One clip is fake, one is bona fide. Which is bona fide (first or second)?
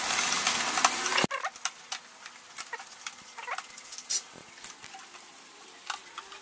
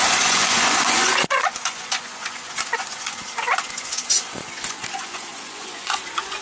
first